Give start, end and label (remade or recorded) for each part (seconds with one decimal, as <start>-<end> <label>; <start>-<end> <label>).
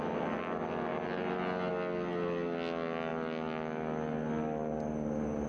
0.0-5.5 recorded